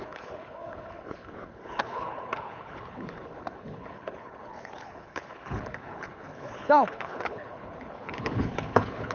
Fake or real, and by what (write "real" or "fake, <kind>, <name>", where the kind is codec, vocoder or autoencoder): fake, codec, HILCodec